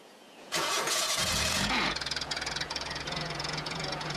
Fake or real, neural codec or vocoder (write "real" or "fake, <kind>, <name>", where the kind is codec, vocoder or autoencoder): fake, vocoder, Vocos